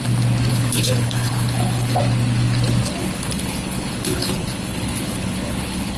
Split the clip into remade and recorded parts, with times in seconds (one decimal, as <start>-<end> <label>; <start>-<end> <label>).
0.0-0.5 recorded; 0.5-2.0 remade; 2.0-3.0 recorded; 3.0-6.0 remade